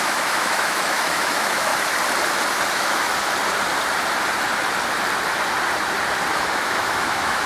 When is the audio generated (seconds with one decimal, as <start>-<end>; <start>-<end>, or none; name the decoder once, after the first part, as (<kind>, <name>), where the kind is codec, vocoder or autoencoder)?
0.0-1.7 (autoencoder, DAC-VAE); 2.7-3.1; 6.3-7.5